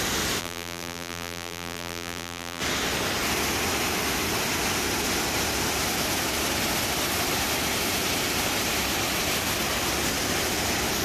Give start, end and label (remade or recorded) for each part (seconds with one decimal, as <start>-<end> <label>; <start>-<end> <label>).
0.0-0.4 recorded; 0.4-2.6 remade; 2.6-11.0 recorded

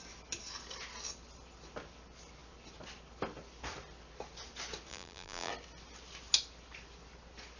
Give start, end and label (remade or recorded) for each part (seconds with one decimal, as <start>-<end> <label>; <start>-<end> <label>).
0.0-4.9 recorded; 4.9-5.5 remade; 5.5-7.6 recorded

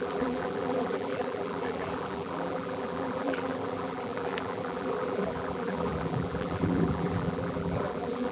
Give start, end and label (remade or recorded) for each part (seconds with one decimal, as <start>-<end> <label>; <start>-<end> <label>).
0.0-8.3 remade

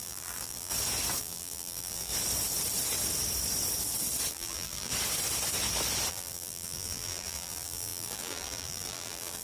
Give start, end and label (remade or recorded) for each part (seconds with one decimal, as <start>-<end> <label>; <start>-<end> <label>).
0.0-0.7 remade; 0.7-1.2 recorded; 1.2-2.1 remade; 2.1-4.3 recorded; 4.3-4.9 remade; 4.9-6.1 recorded; 6.1-9.4 remade

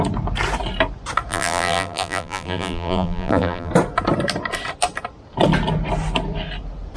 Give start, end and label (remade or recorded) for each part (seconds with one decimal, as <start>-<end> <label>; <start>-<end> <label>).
0.0-1.3 recorded; 1.3-3.7 remade; 3.7-7.0 recorded

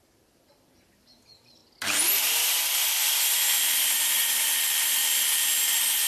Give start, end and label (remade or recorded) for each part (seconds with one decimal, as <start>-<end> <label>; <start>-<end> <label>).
0.0-1.6 remade; 1.6-3.8 recorded; 3.8-5.0 remade; 5.0-5.6 recorded; 5.6-6.1 remade

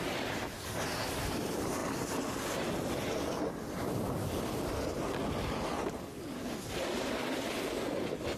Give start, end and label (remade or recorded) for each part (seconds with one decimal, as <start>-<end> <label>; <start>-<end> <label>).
0.0-8.4 recorded

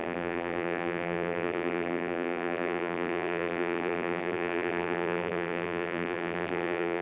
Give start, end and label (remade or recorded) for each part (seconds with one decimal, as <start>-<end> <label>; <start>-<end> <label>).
0.0-7.0 remade